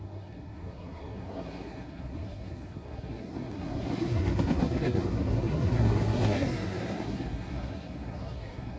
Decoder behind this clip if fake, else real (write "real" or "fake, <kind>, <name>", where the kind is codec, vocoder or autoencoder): fake, codec, SNAC